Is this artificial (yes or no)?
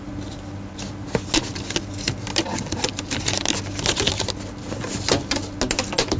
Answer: no